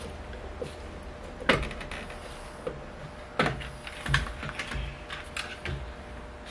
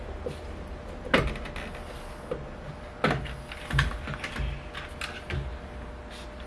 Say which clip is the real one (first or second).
first